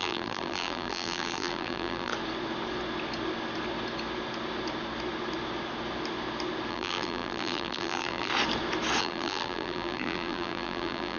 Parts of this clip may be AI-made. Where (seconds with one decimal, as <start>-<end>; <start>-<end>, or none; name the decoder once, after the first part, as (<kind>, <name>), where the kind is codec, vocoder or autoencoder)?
0.0-2.1 (vocoder, BigVGAN v2); 6.7-8.3; 9.0-11.2